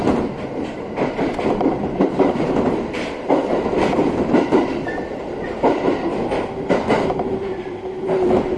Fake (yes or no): yes